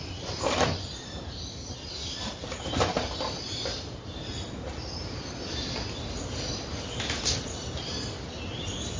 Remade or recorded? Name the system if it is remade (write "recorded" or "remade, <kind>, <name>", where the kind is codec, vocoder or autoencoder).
recorded